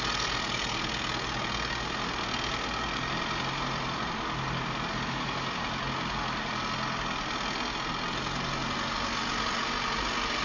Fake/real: real